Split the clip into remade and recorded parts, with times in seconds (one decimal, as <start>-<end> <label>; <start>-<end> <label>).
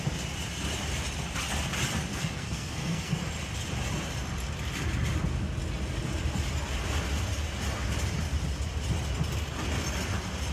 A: 0.0-2.1 recorded; 2.1-3.2 remade; 3.2-10.5 recorded